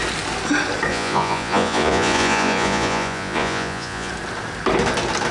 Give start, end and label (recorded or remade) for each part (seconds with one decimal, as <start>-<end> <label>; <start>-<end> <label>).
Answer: 0.0-0.9 recorded; 0.9-4.1 remade; 4.1-5.3 recorded